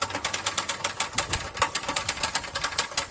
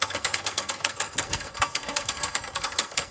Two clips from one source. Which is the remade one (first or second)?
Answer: second